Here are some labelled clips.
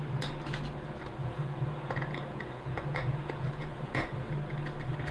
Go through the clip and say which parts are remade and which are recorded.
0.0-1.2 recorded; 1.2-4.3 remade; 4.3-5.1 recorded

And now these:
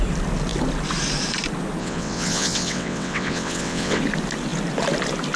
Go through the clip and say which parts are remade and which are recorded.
0.0-1.8 recorded; 1.8-4.0 remade; 4.0-5.4 recorded

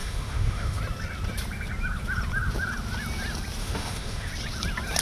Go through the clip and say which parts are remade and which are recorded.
0.0-0.8 remade; 0.8-3.6 recorded; 3.6-4.3 remade; 4.3-5.0 recorded

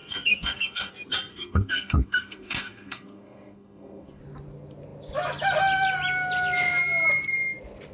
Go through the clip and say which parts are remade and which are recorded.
0.0-0.9 remade; 0.9-1.3 recorded; 1.3-4.2 remade; 4.2-7.9 recorded

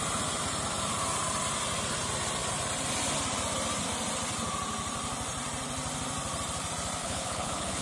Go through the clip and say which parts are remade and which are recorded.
0.0-7.0 recorded; 7.0-7.8 remade

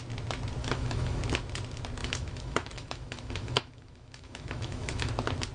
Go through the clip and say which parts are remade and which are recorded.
0.0-0.6 recorded; 0.6-1.2 remade; 1.2-2.0 recorded; 2.0-5.1 remade; 5.1-5.5 recorded